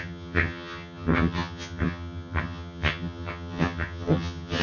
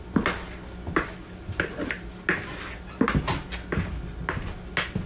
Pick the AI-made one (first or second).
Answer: first